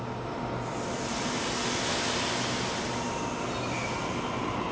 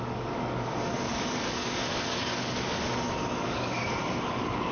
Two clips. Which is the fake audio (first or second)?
second